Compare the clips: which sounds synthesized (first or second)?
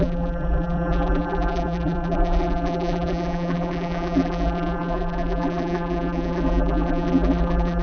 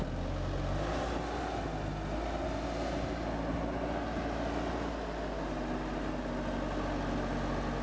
first